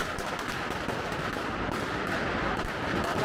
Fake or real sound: real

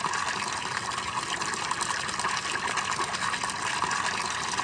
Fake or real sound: real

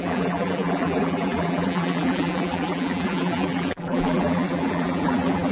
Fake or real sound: fake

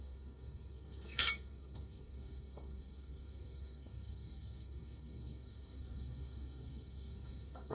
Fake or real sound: fake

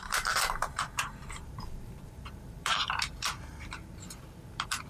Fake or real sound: fake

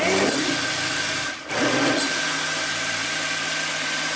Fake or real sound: real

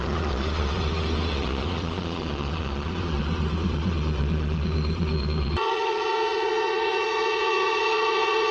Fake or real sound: fake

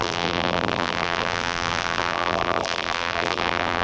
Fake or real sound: fake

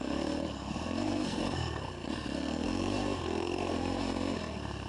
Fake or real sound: fake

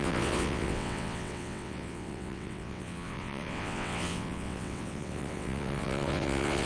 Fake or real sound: fake